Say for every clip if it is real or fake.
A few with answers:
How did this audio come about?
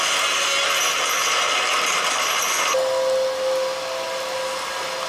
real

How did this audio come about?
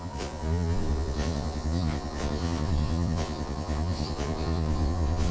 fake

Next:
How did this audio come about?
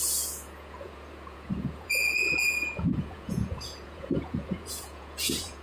fake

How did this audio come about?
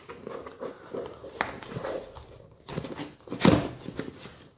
real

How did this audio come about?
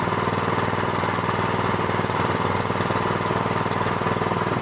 real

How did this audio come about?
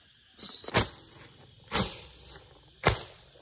real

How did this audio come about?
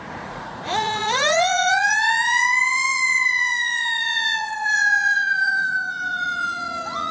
fake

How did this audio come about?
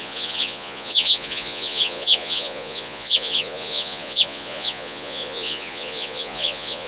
fake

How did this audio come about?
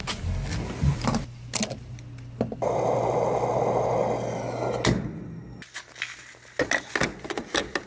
real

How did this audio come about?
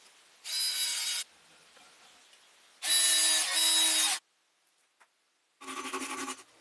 real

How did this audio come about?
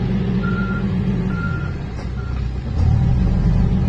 fake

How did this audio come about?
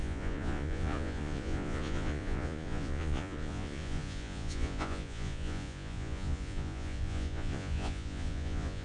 fake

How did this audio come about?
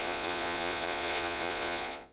fake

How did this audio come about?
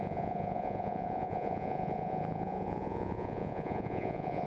fake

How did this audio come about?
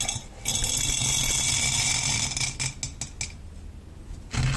real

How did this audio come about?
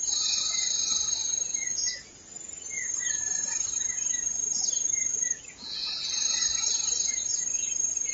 fake